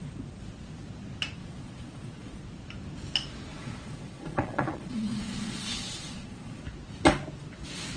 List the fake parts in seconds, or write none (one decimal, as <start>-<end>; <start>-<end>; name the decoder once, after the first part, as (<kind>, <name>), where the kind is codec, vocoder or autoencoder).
1.4-2.4 (vocoder, Vocos); 3.5-6.6